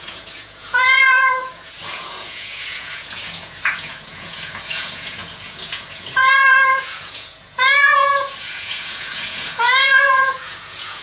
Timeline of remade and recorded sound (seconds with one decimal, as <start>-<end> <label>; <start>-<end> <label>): 0.0-11.0 remade